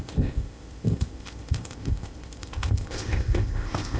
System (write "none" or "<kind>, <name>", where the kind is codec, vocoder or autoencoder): codec, ZipCodec